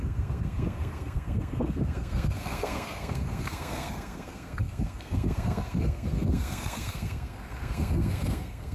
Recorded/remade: remade